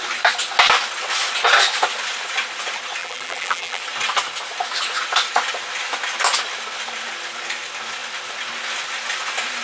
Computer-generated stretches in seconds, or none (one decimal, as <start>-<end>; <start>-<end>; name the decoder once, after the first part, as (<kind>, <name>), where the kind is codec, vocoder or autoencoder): 3.0-3.8 (vocoder, BigVGAN v2)